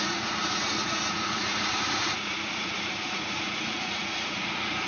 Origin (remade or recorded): remade